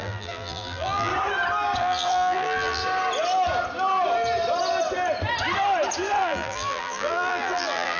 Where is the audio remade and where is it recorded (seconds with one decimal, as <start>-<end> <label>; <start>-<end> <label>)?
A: 0.0-1.1 remade; 1.1-1.8 recorded; 1.8-2.8 remade; 2.8-6.2 recorded; 6.2-8.0 remade